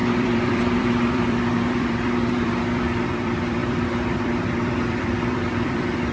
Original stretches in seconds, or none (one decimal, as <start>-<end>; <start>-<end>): none